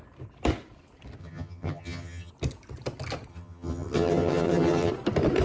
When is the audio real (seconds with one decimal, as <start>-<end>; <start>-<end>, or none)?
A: 0.0-1.2; 2.3-3.3; 4.9-5.4